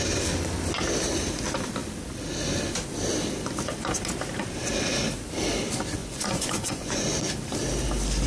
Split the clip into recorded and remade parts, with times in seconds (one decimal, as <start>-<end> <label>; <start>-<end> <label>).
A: 0.0-6.0 recorded; 6.0-7.0 remade; 7.0-8.3 recorded

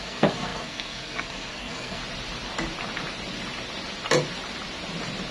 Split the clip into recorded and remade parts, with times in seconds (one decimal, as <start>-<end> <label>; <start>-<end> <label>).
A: 0.0-2.0 remade; 2.0-5.3 recorded

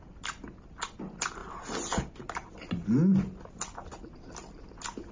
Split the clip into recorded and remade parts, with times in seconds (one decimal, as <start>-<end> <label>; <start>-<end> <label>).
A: 0.0-5.1 recorded

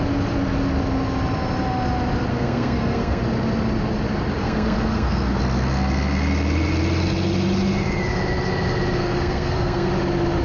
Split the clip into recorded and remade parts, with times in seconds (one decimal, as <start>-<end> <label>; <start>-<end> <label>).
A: 0.0-2.3 recorded; 2.3-3.2 remade; 3.2-4.4 recorded; 4.4-5.4 remade; 5.4-9.0 recorded; 9.0-9.9 remade; 9.9-10.4 recorded